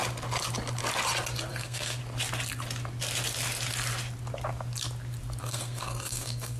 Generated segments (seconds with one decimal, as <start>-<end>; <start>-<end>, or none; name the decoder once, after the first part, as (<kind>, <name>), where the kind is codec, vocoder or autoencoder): 1.5-2.0 (codec, SNAC); 5.4-6.6